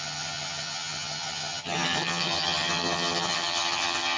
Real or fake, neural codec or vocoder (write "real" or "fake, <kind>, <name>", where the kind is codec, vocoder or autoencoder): fake, vocoder, HiFi-GAN